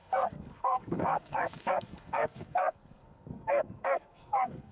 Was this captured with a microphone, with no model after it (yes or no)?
no